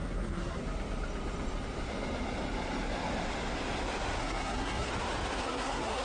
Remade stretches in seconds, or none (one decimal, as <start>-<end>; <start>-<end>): 0.0-0.6; 4.2-4.9; 5.4-6.0